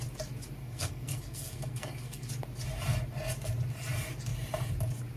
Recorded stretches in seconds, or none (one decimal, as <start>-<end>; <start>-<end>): 0.0-0.6; 2.3-5.2

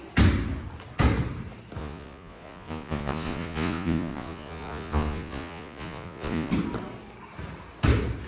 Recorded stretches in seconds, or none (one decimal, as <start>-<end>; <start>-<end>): 0.0-1.8; 6.5-8.3

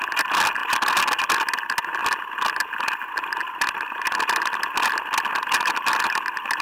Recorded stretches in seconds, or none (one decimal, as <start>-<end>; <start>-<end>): 0.0-6.6

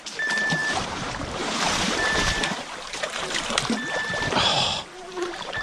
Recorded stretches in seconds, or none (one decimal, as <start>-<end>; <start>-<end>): none

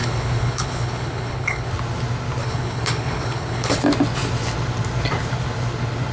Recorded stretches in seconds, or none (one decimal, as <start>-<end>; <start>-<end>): 1.7-2.4; 3.8-6.1

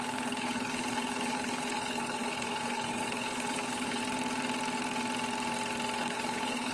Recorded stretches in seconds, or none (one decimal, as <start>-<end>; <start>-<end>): 4.0-6.0